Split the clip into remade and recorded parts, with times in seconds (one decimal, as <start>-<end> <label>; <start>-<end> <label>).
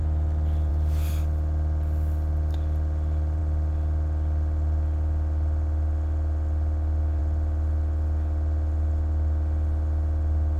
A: 0.0-10.6 recorded